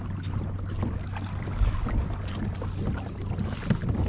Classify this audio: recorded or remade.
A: recorded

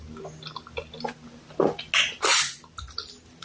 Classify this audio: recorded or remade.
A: recorded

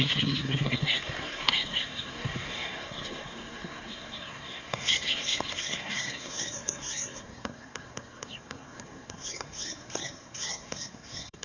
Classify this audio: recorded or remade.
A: remade